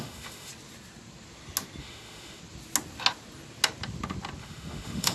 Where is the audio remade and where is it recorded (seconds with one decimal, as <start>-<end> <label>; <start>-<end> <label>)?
0.0-0.5 remade; 0.5-1.8 recorded; 1.8-2.4 remade; 2.4-4.4 recorded; 4.4-5.1 remade